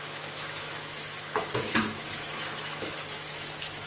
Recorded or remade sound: remade